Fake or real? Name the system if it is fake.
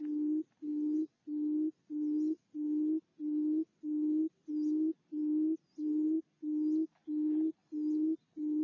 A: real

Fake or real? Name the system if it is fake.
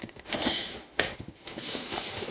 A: fake, autoencoder, DAC-VAE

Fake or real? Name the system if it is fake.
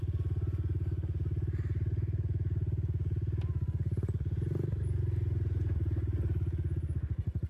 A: real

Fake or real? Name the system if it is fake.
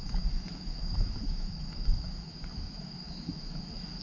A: fake, autoencoder, DAC-VAE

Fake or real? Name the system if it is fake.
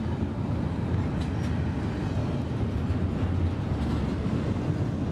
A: real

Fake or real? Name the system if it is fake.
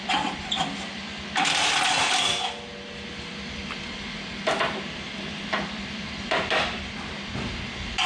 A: real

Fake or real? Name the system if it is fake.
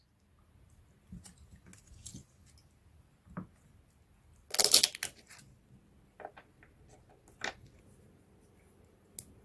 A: real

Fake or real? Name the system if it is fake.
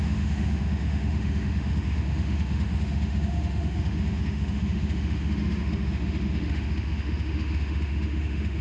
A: fake, autoencoder, DAC-VAE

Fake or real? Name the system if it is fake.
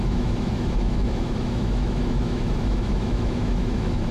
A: fake, autoencoder, DAC-VAE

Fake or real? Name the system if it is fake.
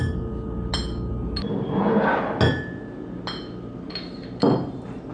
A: real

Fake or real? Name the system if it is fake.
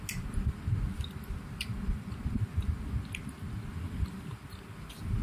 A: real